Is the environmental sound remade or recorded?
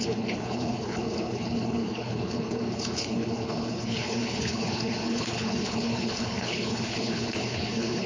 remade